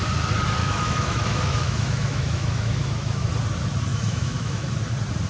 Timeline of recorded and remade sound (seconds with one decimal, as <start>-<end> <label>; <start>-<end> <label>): 0.0-0.6 recorded; 0.6-3.3 remade; 3.3-3.9 recorded; 3.9-4.7 remade; 4.7-5.3 recorded